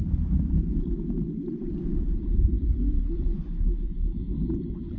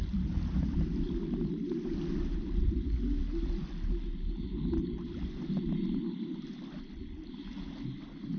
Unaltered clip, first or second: second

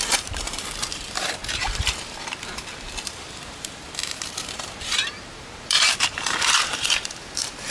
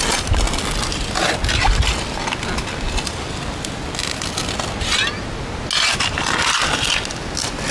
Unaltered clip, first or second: second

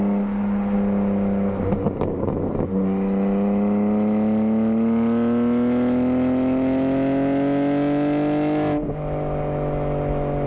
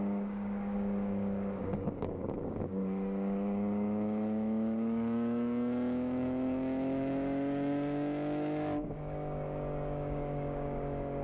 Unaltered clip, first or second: first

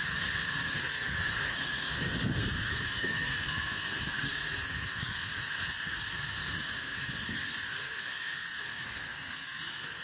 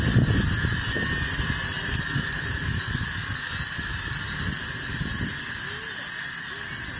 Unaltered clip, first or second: second